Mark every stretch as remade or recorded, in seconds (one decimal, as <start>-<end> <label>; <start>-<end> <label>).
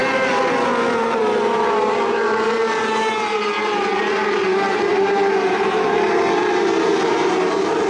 0.0-1.0 recorded; 1.0-7.9 remade